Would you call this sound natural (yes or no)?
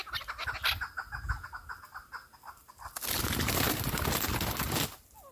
yes